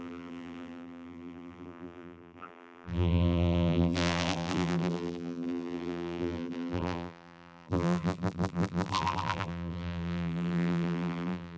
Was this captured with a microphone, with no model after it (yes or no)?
no